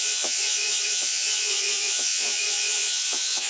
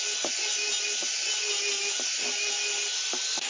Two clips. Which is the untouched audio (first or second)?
second